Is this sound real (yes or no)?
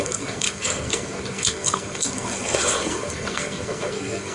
no